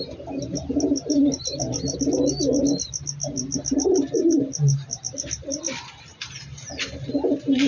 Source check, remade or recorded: recorded